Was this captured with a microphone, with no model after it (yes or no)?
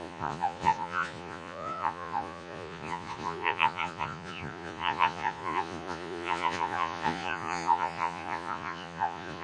no